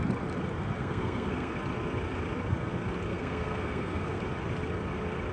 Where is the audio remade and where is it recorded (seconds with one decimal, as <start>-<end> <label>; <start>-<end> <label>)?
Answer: 0.0-0.8 recorded; 0.8-1.5 remade; 1.5-3.1 recorded; 3.1-4.2 remade; 4.2-5.3 recorded